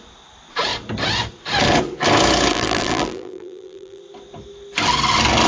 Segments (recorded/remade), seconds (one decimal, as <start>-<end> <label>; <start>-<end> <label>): 0.0-2.5 recorded; 2.5-4.0 remade; 4.0-5.5 recorded